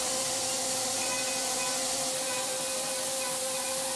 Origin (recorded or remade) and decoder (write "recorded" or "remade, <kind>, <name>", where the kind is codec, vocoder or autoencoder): recorded